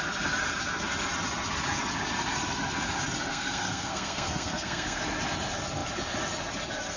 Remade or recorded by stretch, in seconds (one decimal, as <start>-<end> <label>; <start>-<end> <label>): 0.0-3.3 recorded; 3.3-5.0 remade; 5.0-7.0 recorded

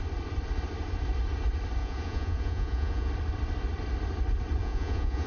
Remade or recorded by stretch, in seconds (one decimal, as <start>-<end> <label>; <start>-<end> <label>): 0.0-1.8 recorded; 1.8-3.1 remade; 3.1-4.6 recorded; 4.6-5.3 remade

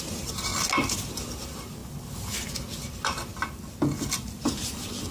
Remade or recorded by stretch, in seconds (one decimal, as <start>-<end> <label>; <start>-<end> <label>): 0.0-0.5 remade; 0.5-1.1 recorded; 1.1-1.8 remade; 1.8-2.9 recorded; 2.9-3.3 remade; 3.3-4.2 recorded; 4.2-5.1 remade

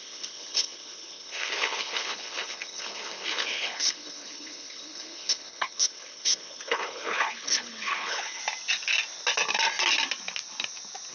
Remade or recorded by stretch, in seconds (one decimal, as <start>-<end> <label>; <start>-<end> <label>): 0.0-8.4 remade; 8.4-11.1 recorded